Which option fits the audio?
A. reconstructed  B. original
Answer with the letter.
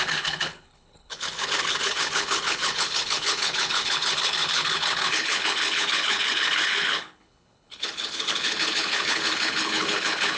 A